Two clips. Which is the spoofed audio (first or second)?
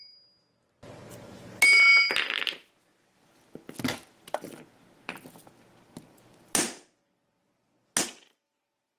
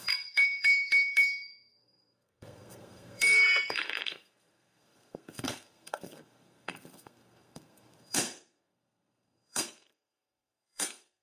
second